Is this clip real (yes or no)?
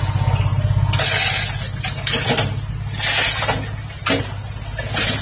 yes